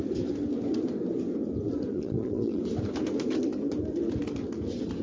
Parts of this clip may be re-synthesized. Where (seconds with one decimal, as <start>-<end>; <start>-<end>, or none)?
1.9-2.6